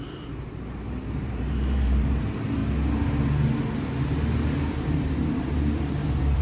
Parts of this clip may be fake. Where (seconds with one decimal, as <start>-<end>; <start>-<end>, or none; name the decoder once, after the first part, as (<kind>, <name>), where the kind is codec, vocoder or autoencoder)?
0.0-2.6 (vocoder, BigVGAN v2); 4.0-6.4